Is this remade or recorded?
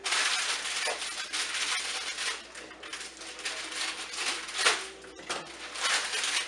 recorded